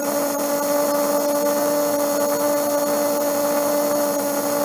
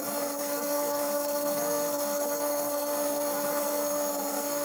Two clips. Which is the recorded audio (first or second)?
first